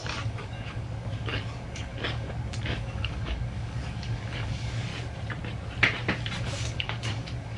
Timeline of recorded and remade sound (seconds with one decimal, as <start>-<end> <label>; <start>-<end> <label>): 0.0-4.9 remade; 4.9-6.4 recorded; 6.4-7.6 remade